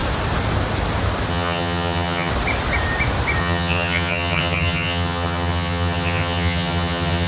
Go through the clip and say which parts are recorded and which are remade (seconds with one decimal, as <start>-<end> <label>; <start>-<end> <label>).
0.0-1.3 recorded; 1.3-2.3 remade; 2.3-3.4 recorded; 3.4-7.3 remade